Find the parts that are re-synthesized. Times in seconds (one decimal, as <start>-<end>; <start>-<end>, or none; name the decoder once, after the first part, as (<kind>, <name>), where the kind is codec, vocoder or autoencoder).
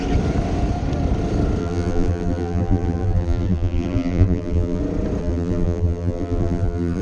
1.6-4.8 (vocoder, BigVGAN v2); 5.2-7.0